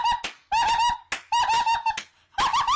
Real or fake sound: real